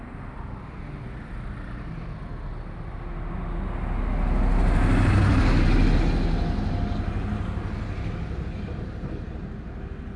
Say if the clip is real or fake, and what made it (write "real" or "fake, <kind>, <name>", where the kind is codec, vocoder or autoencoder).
real